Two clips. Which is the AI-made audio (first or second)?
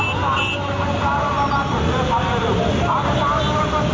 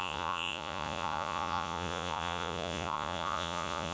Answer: second